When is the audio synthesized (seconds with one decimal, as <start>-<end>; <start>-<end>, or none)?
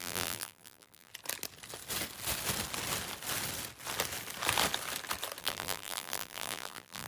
0.0-1.1; 5.4-7.1